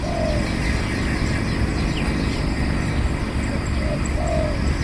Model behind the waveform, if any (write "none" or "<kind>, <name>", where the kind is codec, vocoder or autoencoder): none